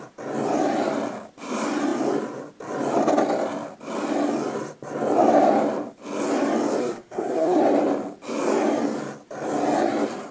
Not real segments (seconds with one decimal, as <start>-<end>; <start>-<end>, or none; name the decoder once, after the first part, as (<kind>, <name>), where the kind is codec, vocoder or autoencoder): 6.8-7.6 (codec, SNAC)